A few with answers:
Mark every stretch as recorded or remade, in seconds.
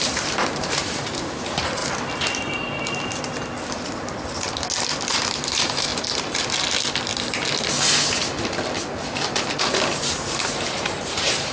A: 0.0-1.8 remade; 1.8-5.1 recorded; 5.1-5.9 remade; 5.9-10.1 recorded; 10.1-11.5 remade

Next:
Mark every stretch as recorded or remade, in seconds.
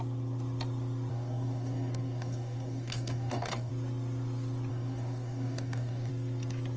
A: 0.0-1.1 recorded; 1.1-3.7 remade; 3.7-4.7 recorded; 4.7-6.1 remade; 6.1-6.8 recorded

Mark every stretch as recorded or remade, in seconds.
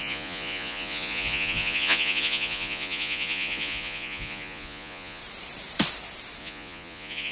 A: 0.0-5.2 remade; 5.2-6.4 recorded; 6.4-7.3 remade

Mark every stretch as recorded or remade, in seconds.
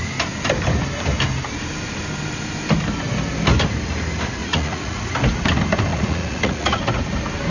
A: 0.0-4.4 recorded; 4.4-5.0 remade; 5.0-5.9 recorded; 5.9-6.8 remade; 6.8-7.5 recorded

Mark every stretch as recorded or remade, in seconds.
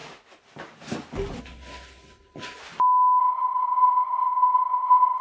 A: 0.0-1.4 recorded; 1.4-2.6 remade; 2.6-3.2 recorded; 3.2-5.2 remade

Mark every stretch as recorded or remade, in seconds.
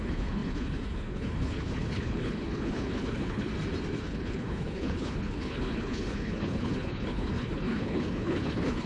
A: 0.0-3.5 remade; 3.5-4.0 recorded; 4.0-8.9 remade